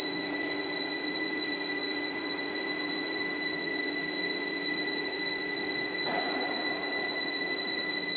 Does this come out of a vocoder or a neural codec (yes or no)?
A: yes